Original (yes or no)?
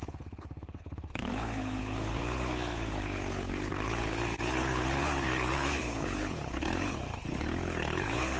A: no